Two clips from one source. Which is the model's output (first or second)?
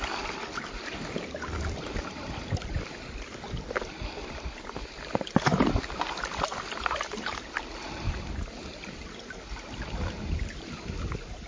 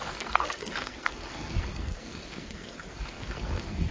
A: second